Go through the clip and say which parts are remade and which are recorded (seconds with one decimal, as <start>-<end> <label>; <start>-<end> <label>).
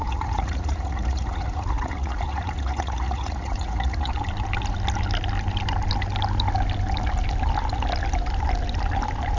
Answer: 0.0-4.1 remade; 4.1-9.4 recorded